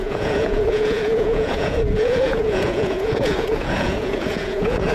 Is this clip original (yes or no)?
no